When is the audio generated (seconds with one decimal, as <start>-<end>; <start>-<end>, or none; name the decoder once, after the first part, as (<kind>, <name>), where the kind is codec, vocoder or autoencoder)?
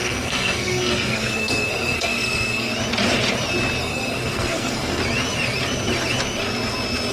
0.0-2.7 (codec, SNAC); 3.8-5.0